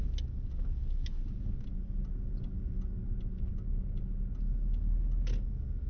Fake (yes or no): no